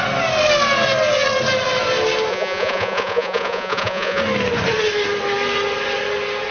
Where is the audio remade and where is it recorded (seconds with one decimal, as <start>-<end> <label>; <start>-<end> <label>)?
0.0-2.3 recorded; 2.3-4.2 remade; 4.2-6.5 recorded